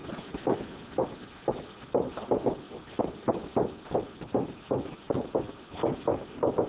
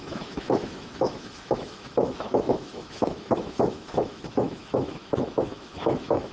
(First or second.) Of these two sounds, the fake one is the second